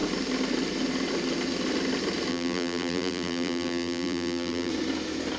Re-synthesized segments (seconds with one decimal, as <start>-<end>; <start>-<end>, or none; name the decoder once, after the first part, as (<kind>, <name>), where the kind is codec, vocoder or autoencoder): 2.3-4.7 (vocoder, BigVGAN v2)